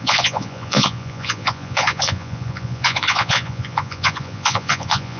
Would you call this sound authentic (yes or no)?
no